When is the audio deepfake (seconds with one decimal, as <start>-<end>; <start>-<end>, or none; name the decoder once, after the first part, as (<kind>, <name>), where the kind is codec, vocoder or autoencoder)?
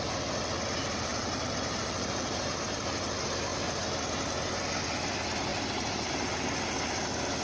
1.1-3.0 (vocoder, BigVGAN v2); 5.5-6.3